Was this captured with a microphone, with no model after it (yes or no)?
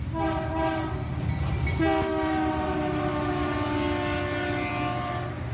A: yes